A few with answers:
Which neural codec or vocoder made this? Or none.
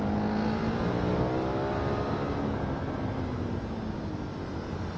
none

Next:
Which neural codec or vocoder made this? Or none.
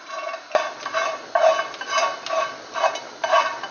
none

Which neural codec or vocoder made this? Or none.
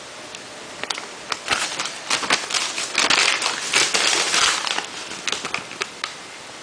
none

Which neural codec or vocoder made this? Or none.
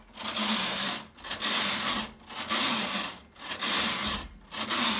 none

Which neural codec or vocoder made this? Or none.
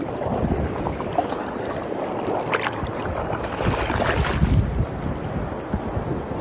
none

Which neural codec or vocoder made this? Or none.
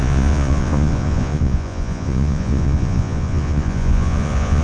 vocoder, Vocos